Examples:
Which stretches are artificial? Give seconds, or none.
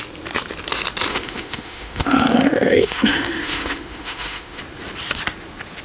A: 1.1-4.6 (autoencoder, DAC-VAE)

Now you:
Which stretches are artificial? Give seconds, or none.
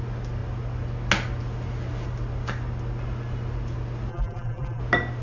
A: 4.1-4.8 (vocoder, BigVGAN v2)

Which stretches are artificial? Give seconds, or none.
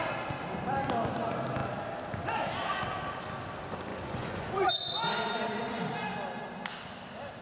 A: 3.9-4.7 (vocoder, Vocos)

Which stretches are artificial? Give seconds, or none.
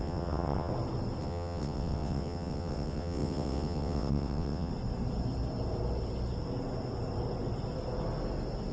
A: 0.0-0.7 (vocoder, WaveNeXt); 1.2-4.7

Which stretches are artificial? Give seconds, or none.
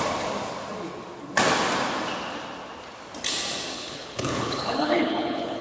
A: 3.7-5.6 (codec, HILCodec)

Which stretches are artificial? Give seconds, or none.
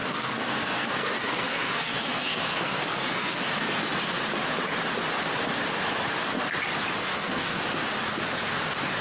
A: 0.0-3.4 (codec, SNAC); 7.0-7.6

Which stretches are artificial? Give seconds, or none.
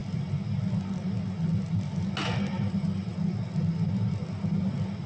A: none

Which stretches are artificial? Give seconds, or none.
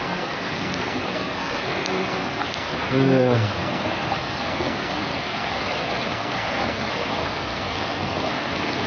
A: 0.0-8.9 (codec, SNAC)